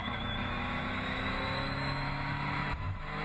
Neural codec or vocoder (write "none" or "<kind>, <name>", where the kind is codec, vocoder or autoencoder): autoencoder, DAC-VAE